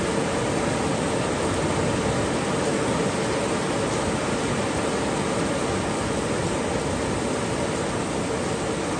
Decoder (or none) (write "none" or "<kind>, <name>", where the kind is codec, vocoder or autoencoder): none